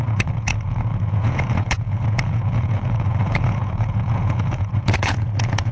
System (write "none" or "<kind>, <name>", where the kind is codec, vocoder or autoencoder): vocoder, Vocos